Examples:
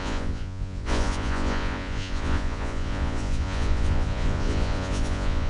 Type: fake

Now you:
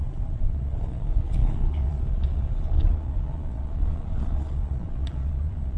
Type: fake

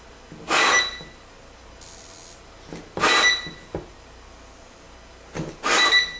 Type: real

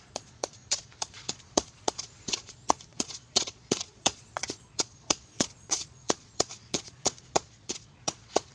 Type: fake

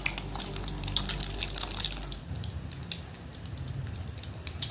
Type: real